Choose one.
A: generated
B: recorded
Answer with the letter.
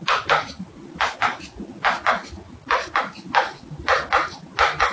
B